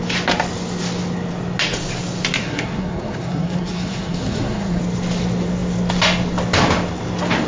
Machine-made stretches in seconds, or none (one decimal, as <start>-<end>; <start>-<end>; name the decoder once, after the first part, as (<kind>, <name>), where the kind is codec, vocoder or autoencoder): 2.4-4.8 (codec, SNAC)